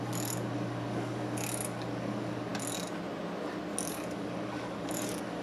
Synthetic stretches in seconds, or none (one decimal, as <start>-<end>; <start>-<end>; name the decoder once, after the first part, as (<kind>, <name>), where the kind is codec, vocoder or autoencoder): 0.0-2.5 (codec, DAC); 3.9-5.4